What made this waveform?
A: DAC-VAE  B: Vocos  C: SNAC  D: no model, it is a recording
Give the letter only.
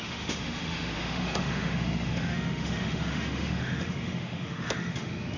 A